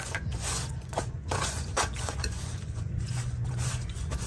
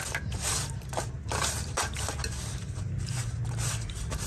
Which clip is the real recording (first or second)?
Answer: second